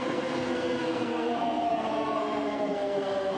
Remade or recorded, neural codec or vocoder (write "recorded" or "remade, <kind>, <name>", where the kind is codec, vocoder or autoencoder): remade, codec, SNAC